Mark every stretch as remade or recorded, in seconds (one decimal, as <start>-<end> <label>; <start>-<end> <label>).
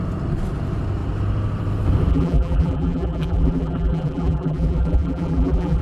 0.0-2.1 recorded; 2.1-5.8 remade